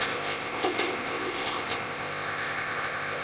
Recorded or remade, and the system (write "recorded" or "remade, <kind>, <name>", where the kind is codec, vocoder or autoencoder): remade, codec, ZipCodec